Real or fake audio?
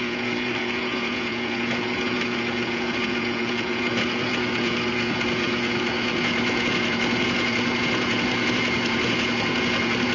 fake